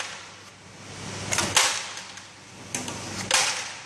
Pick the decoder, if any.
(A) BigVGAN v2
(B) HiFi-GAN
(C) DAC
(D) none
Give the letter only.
D